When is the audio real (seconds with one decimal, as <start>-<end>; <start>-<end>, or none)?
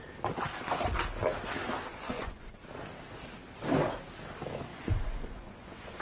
0.0-1.9; 2.5-4.7